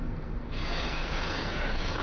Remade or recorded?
remade